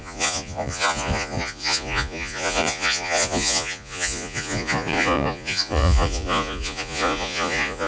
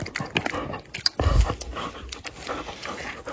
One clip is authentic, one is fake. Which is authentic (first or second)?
second